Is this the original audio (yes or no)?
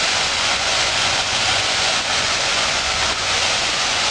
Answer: no